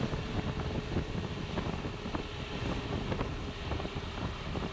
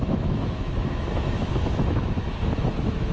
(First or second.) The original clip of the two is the first